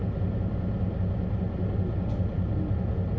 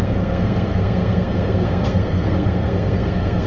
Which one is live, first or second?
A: first